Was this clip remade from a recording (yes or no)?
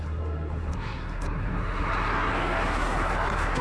yes